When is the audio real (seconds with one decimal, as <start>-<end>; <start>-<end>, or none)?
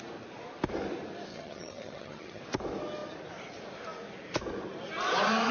0.0-1.3; 2.4-5.5